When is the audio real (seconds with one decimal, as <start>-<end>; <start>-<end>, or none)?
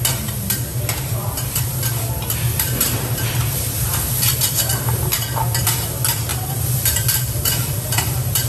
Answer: 0.0-0.7; 1.6-2.5; 3.9-6.3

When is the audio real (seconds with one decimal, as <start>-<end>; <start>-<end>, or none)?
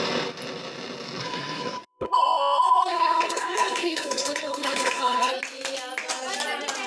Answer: 0.0-1.2; 5.3-6.9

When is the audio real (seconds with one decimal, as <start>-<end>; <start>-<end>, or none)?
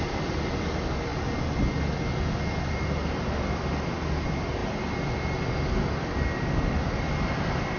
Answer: 0.0-7.8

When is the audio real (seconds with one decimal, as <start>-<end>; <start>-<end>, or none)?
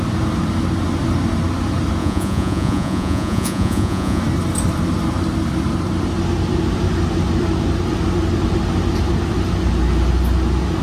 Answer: 0.0-2.0; 4.2-10.8